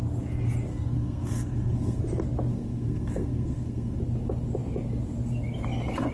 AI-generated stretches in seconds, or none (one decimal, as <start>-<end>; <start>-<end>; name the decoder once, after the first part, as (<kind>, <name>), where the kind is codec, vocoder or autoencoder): 0.7-2.0 (codec, SNAC); 2.5-4.0